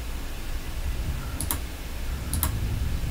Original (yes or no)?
yes